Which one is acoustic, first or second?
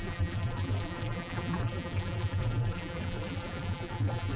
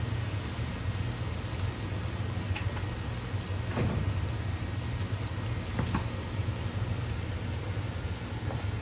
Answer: second